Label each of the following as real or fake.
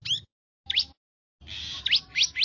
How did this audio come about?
real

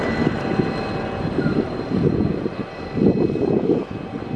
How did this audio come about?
real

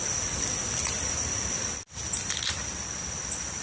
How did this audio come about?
real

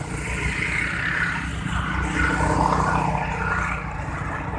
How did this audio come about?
real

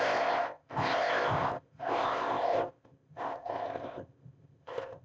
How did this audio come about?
fake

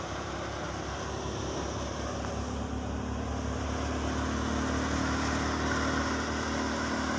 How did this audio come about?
real